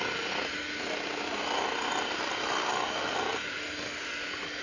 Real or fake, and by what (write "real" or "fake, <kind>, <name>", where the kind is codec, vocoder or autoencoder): real